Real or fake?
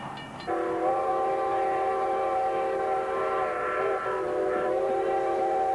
real